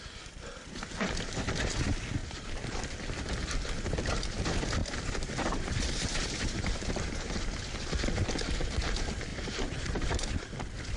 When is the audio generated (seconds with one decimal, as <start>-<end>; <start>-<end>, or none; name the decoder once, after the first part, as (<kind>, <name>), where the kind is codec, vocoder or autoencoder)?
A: 2.2-2.8 (vocoder, BigVGAN v2); 4.8-7.5; 9.3-10.3